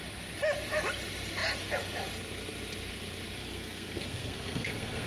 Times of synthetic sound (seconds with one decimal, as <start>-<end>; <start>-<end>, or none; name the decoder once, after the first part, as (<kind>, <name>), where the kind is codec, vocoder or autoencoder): 3.4-5.1 (codec, SNAC)